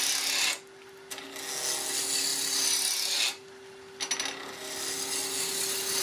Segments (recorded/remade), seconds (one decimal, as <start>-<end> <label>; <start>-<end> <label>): 0.0-6.0 recorded